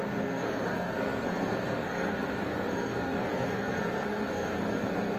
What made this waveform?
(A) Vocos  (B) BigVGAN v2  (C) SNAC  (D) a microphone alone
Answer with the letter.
C